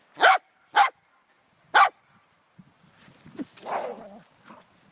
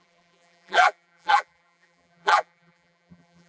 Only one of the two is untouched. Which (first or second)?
first